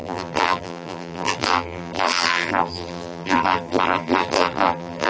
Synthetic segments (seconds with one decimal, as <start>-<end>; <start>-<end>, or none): 0.0-5.1